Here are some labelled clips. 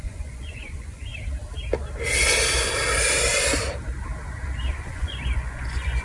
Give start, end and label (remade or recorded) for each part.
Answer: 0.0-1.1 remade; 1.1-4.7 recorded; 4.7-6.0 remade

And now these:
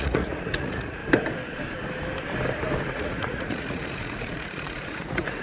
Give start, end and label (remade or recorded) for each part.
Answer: 0.0-1.0 remade; 1.0-2.9 recorded; 2.9-5.4 remade

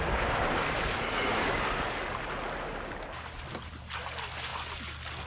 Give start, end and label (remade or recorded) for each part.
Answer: 0.0-5.3 recorded

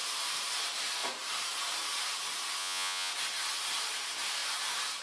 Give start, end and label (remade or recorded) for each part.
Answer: 0.0-2.6 recorded; 2.6-3.1 remade; 3.1-5.0 recorded

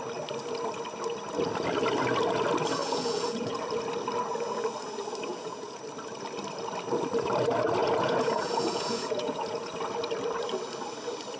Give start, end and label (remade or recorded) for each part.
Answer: 0.0-2.8 recorded; 2.8-3.6 remade; 3.6-5.3 recorded; 5.3-5.8 remade; 5.8-7.8 recorded; 7.8-9.7 remade; 9.7-11.4 recorded

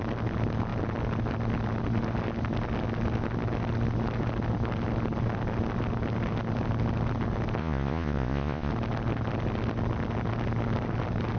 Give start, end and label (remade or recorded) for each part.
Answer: 0.0-7.6 recorded; 7.6-8.7 remade; 8.7-11.4 recorded

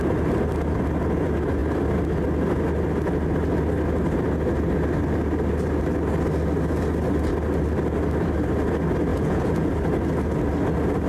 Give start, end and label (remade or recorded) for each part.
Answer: 0.0-9.1 recorded; 9.1-9.7 remade; 9.7-11.1 recorded

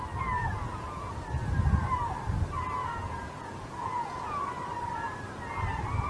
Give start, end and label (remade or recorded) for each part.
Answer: 0.0-0.4 recorded; 0.4-1.1 remade; 1.1-2.8 recorded; 2.8-4.4 remade; 4.4-6.1 recorded